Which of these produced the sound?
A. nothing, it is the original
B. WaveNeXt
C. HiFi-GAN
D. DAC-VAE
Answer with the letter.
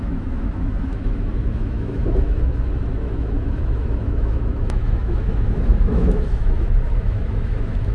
D